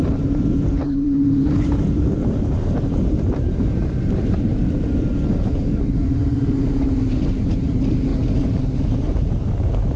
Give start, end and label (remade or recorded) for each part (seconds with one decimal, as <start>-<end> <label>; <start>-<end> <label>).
0.0-4.5 remade; 4.5-5.4 recorded; 5.4-8.1 remade; 8.1-8.6 recorded; 8.6-10.0 remade